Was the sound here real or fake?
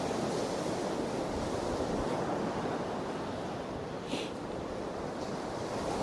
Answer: real